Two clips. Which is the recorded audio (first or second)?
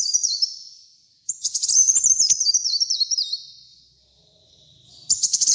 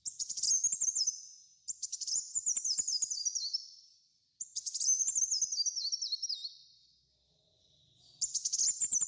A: second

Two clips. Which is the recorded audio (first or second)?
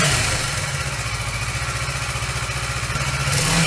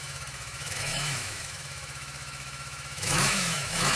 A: first